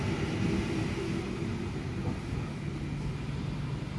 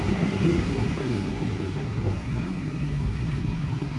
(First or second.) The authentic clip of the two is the first